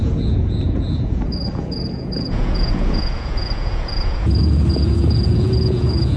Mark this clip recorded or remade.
remade